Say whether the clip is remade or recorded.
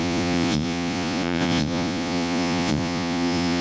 remade